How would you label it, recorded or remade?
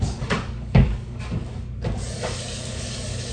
remade